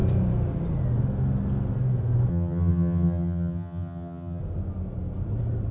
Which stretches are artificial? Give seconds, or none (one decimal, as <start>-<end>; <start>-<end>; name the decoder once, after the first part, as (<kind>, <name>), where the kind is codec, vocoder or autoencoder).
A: 2.3-4.4 (vocoder, HiFi-GAN)